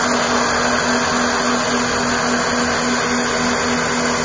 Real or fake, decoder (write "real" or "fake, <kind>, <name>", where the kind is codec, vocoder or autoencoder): real